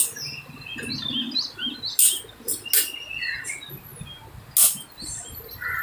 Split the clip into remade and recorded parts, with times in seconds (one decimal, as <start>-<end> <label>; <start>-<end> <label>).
0.0-5.8 recorded